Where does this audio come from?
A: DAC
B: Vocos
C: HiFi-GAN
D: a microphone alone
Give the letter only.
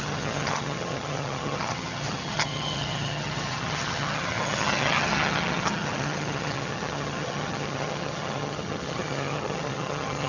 C